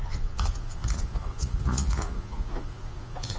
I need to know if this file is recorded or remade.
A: remade